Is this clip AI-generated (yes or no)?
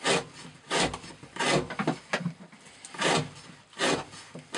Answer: no